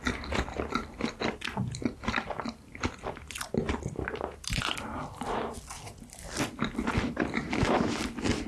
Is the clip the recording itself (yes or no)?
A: yes